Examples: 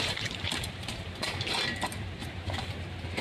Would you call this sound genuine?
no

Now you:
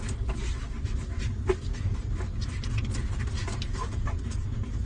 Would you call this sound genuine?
yes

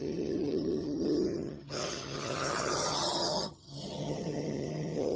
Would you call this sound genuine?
no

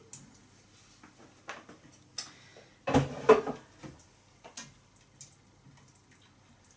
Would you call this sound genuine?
yes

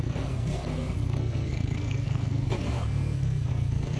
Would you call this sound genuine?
no